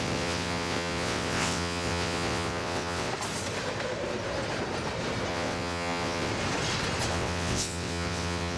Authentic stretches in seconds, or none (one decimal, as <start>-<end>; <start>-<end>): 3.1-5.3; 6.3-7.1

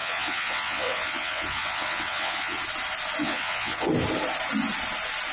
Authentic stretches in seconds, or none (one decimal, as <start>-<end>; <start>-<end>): 2.6-3.2; 3.9-5.3

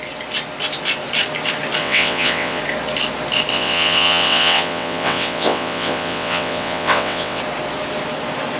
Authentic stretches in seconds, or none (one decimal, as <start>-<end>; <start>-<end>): 0.0-1.8; 2.6-3.5; 7.4-8.6